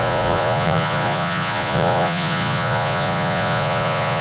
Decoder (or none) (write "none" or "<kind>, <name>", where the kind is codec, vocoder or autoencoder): vocoder, Vocos